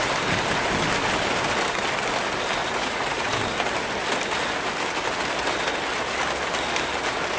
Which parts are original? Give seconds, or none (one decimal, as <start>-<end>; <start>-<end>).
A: 0.0-2.6; 3.3-7.4